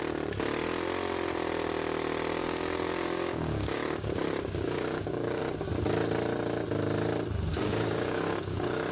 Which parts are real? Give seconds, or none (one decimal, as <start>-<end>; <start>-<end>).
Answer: 0.0-2.4; 5.4-7.5